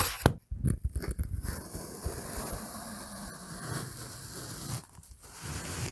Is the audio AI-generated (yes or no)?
no